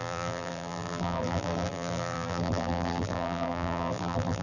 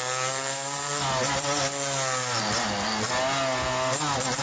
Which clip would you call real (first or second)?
second